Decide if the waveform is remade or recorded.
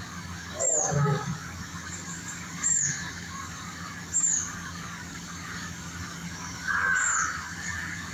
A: remade